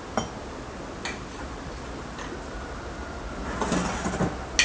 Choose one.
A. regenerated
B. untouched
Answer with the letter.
B